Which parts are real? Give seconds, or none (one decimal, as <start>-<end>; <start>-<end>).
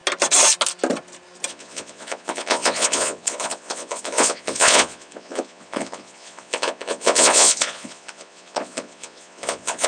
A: 0.0-1.5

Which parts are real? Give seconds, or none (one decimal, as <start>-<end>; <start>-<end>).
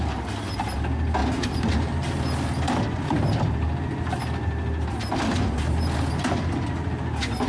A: 0.0-7.5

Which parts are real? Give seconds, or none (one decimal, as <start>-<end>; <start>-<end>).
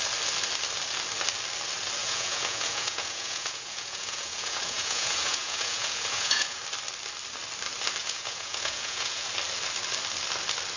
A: 0.0-2.0; 6.6-8.0; 9.3-10.8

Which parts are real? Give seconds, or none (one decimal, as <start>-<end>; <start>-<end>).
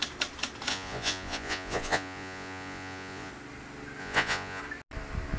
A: 0.0-0.7; 3.3-4.0; 4.6-5.4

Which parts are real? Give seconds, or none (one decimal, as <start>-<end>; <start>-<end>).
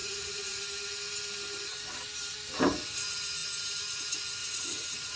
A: 0.6-4.4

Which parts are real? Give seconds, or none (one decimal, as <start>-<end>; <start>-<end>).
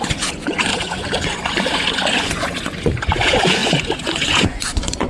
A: none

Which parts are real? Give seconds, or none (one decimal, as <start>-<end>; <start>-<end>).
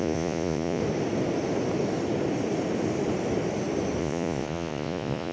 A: 0.8-4.0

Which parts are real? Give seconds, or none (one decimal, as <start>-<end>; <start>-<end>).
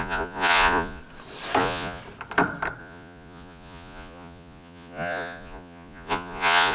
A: 1.0-1.6; 2.0-2.8